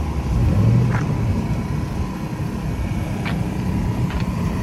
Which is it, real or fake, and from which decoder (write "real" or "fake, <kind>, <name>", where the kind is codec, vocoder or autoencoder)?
real